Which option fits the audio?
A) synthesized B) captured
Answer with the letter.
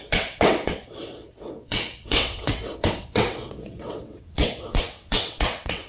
A